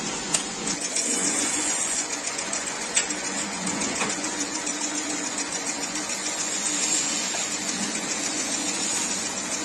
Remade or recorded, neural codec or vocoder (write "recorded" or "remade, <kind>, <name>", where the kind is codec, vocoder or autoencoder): remade, vocoder, Vocos